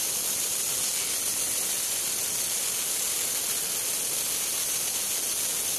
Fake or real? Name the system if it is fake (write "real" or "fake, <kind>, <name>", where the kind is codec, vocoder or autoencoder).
real